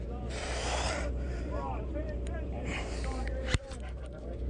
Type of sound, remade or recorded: remade